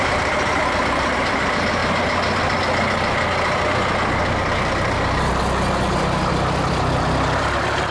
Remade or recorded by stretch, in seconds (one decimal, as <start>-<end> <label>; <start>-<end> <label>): 0.0-1.8 remade; 1.8-5.9 recorded; 5.9-7.9 remade